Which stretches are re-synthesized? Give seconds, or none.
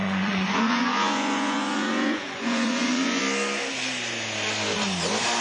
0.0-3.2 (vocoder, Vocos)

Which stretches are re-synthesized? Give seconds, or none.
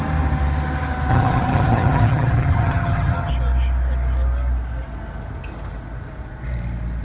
1.1-3.3 (vocoder, HiFi-GAN)